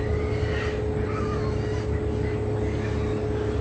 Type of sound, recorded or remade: recorded